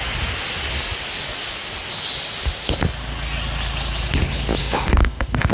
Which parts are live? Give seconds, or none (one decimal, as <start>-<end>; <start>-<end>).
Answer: 0.0-4.6